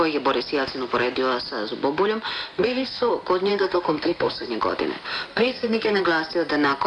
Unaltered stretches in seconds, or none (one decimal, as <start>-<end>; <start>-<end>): 0.0-2.5; 3.1-3.5; 4.5-5.3; 6.0-6.9